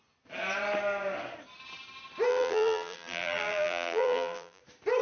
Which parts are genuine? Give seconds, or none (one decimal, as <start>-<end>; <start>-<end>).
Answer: 0.0-2.3; 4.6-5.0